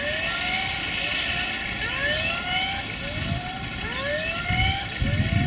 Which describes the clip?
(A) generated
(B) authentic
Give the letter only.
A